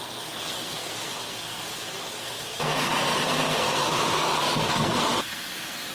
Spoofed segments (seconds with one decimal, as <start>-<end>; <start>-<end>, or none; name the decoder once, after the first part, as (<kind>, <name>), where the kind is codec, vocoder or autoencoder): 0.0-5.9 (codec, SNAC)